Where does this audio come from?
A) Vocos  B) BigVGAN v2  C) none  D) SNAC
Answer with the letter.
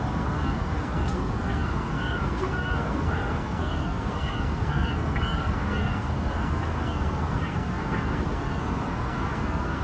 D